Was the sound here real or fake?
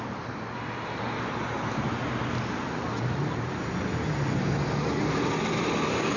real